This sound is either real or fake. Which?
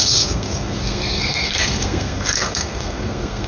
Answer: fake